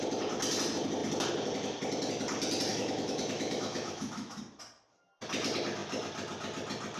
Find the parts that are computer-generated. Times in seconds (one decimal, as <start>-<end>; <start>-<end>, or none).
2.7-4.4